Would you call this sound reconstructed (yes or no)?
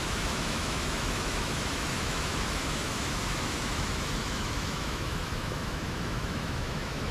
yes